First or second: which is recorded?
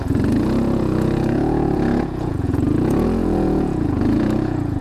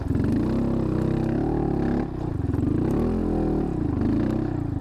second